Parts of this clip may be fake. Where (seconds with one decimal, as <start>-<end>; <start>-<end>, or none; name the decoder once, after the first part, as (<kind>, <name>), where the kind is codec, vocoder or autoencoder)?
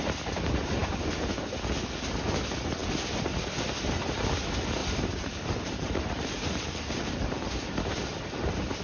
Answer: 4.8-7.7 (vocoder, BigVGAN v2)